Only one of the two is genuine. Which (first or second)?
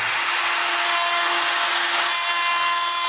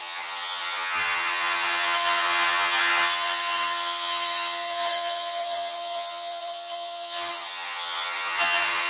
first